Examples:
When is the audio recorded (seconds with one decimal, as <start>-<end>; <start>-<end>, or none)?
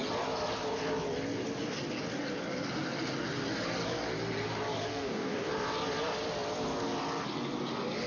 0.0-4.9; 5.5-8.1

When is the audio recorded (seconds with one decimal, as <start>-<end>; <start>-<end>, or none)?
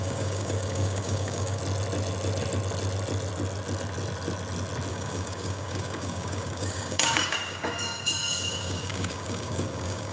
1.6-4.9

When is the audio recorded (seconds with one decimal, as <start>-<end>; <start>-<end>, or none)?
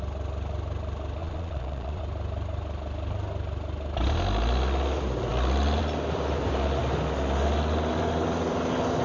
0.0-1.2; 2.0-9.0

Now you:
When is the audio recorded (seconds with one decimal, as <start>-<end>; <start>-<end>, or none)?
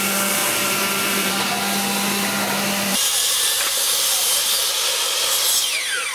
0.0-0.4; 1.5-2.9; 4.4-6.1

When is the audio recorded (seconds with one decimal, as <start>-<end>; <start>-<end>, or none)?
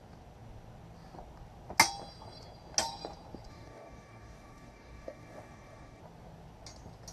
0.0-3.5; 6.0-7.1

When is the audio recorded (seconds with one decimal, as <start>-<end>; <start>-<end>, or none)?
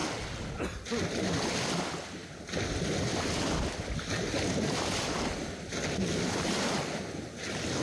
0.0-7.8